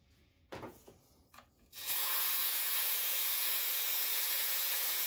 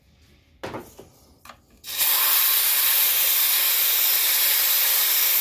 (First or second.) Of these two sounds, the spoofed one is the first